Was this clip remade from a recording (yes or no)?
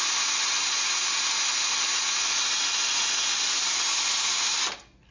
no